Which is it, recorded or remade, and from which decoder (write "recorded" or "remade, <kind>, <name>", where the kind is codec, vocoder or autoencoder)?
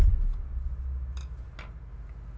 recorded